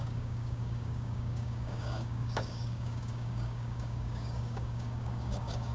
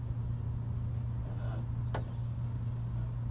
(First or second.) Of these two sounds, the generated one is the first